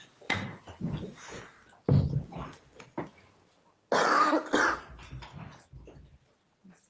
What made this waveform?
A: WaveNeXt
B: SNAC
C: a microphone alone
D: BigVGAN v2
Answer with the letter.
C